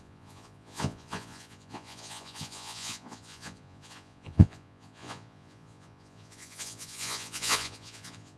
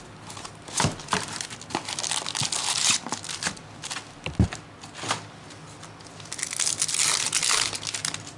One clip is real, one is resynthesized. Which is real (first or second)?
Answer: second